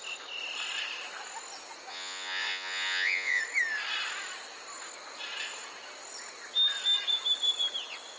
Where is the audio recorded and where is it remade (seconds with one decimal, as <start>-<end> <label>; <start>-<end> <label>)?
0.0-1.9 recorded; 1.9-3.4 remade; 3.4-8.2 recorded